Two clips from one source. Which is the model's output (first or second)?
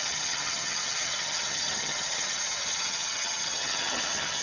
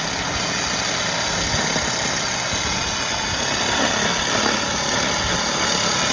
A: first